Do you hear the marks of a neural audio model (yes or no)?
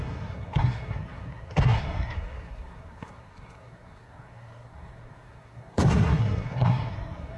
yes